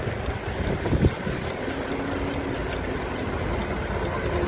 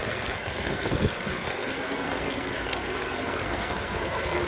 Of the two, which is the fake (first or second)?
second